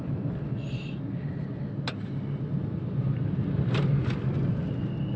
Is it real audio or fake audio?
real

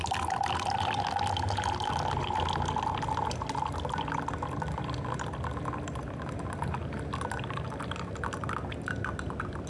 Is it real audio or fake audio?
real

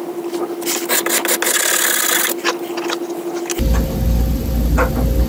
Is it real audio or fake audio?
real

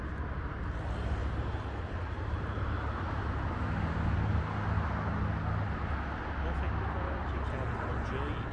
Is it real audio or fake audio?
real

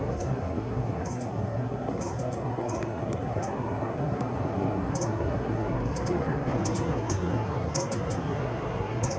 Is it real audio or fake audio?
fake